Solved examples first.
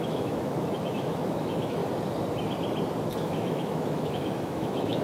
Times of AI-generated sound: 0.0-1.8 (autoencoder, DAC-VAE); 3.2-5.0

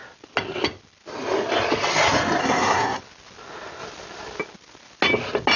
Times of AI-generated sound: 2.4-3.0 (codec, SNAC)

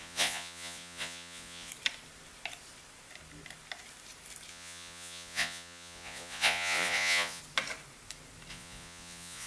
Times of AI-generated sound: 0.0-1.7 (vocoder, Vocos); 4.5-7.4; 8.5-9.5

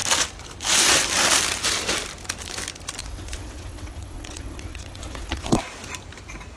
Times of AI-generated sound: 3.0-5.6 (vocoder, WaveNeXt)